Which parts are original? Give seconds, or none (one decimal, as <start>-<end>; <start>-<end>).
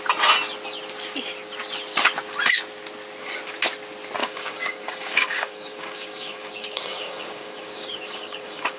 0.0-4.2